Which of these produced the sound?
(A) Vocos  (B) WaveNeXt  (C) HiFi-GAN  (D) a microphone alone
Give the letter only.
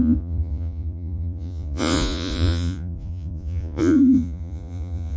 A